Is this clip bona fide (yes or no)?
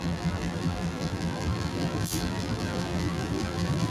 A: no